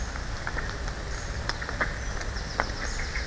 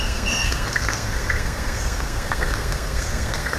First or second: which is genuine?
first